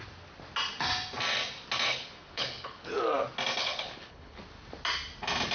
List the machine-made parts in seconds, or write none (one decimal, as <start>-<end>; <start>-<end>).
1.9-2.9; 3.6-4.4